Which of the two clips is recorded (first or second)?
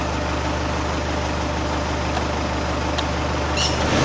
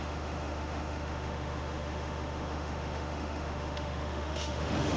first